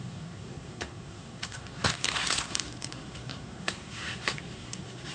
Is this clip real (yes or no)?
no